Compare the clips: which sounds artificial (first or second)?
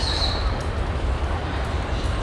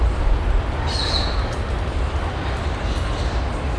first